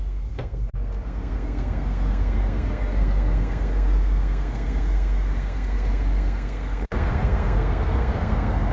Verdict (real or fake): fake